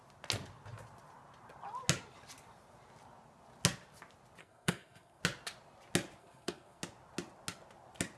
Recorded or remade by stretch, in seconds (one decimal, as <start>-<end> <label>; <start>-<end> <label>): 0.0-4.4 recorded; 4.4-5.2 remade; 5.2-6.2 recorded; 6.2-6.8 remade; 6.8-8.2 recorded

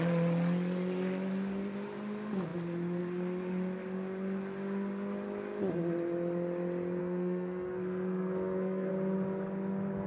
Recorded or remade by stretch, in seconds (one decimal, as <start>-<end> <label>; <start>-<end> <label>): 0.0-7.0 recorded; 7.0-8.9 remade; 8.9-10.1 recorded

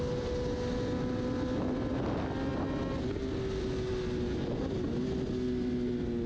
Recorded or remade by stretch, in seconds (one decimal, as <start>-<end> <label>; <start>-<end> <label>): 0.0-6.3 recorded

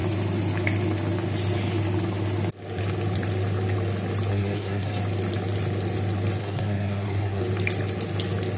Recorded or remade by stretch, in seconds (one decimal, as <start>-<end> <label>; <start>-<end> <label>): 0.0-4.3 recorded; 4.3-5.0 remade; 5.0-6.4 recorded; 6.4-7.4 remade; 7.4-8.6 recorded

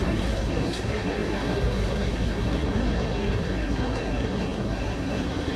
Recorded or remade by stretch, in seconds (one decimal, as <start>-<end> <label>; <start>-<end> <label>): 0.0-5.6 remade

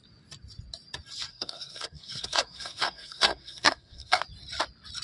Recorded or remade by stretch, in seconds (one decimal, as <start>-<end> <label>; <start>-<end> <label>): 0.0-1.3 recorded; 1.3-4.2 remade; 4.2-5.0 recorded

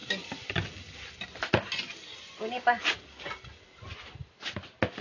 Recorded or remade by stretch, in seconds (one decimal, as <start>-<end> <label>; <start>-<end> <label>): 0.0-5.0 recorded

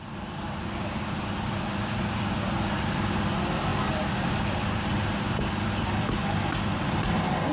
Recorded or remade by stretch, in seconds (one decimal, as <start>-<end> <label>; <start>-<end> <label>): 0.0-7.5 recorded